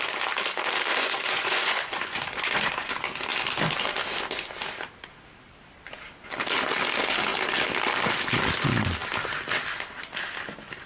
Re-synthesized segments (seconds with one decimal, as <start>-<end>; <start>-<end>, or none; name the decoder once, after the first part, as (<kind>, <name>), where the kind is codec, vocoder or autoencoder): 0.9-2.9 (vocoder, Vocos)